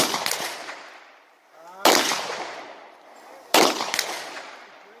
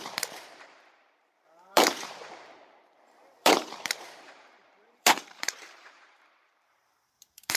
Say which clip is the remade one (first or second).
second